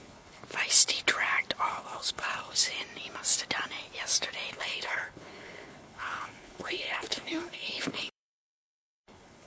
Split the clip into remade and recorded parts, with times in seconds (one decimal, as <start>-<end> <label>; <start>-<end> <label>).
0.0-0.4 remade; 0.4-1.7 recorded; 1.7-2.6 remade; 2.6-4.5 recorded; 4.5-9.5 remade